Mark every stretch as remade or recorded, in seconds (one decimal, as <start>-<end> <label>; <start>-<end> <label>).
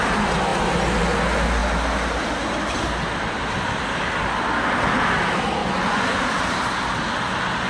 0.0-5.6 recorded; 5.6-6.2 remade; 6.2-7.7 recorded